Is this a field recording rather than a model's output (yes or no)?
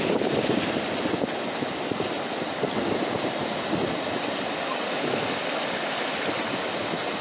yes